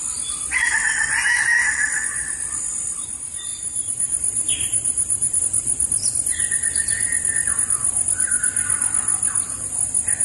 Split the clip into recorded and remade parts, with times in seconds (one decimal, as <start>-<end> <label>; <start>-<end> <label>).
0.0-3.5 recorded; 3.5-5.4 remade; 5.4-10.2 recorded